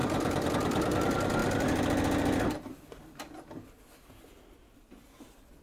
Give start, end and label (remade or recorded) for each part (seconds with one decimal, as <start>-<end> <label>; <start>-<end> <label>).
0.0-0.5 remade; 0.5-5.6 recorded